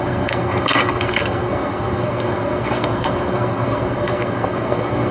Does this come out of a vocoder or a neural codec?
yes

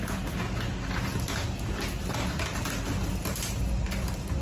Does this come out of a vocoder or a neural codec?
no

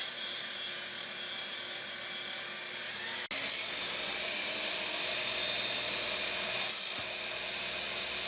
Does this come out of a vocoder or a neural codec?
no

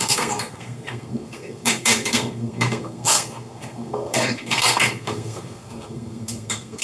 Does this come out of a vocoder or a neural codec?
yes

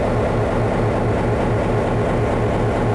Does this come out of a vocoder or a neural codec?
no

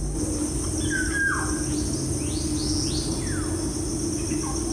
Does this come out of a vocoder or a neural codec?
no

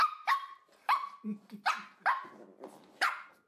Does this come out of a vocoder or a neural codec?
no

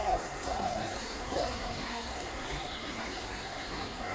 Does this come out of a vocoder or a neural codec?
yes